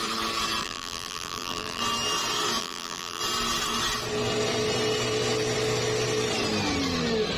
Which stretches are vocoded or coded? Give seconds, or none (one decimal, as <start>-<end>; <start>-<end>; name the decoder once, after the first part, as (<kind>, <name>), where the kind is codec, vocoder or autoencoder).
0.6-1.8 (vocoder, BigVGAN v2); 2.6-3.2